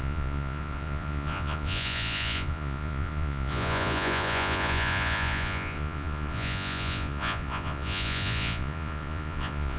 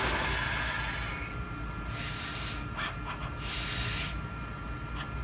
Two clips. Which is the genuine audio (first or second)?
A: second